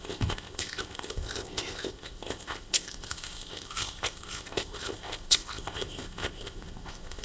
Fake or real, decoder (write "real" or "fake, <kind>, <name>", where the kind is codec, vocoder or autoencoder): fake, codec, ZipCodec